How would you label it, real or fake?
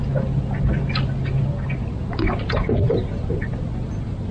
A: real